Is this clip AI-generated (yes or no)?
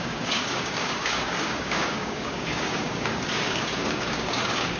yes